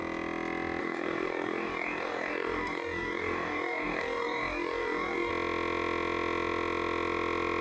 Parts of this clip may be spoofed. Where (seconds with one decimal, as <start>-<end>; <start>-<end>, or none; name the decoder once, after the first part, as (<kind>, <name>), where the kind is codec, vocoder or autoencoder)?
0.8-5.3 (codec, DAC)